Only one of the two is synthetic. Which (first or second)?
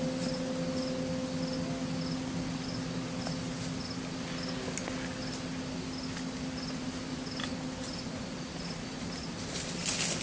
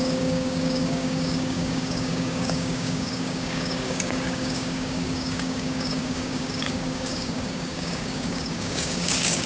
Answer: second